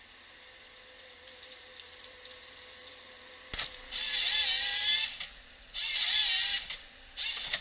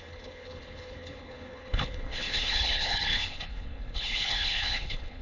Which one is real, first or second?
first